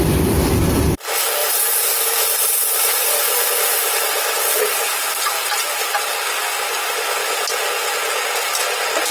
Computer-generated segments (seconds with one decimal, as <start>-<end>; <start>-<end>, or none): 1.4-5.9

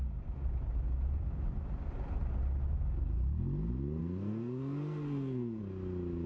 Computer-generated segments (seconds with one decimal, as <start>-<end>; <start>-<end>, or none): 4.0-5.6

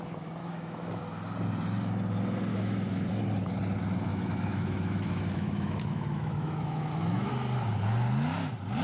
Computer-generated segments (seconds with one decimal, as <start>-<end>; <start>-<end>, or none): 0.4-1.0; 2.5-3.1; 4.1-7.3

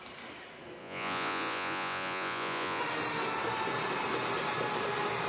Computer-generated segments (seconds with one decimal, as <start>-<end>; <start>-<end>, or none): 0.8-2.8